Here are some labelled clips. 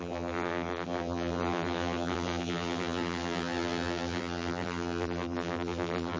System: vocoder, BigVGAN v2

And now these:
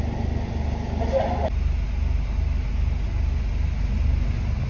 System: none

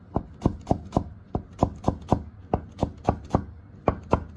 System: none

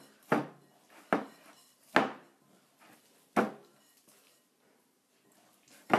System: none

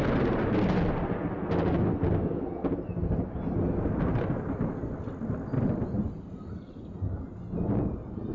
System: none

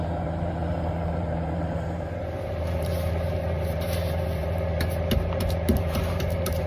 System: vocoder, BigVGAN v2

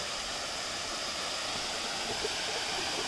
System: none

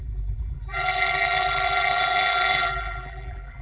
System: vocoder, BigVGAN v2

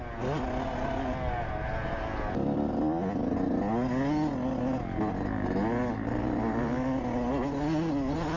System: none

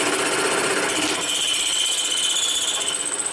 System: none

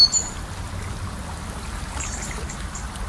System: none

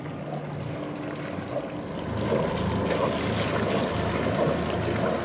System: none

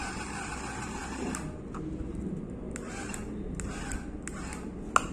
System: none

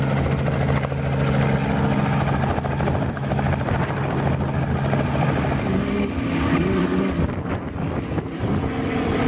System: none